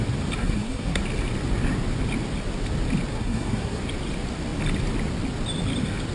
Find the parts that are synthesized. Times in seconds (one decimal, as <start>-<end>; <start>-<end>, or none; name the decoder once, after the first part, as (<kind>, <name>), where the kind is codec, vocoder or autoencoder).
0.4-1.0 (codec, SNAC); 3.1-3.8